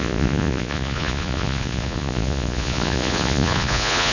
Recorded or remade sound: remade